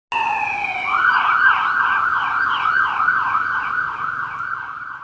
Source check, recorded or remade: recorded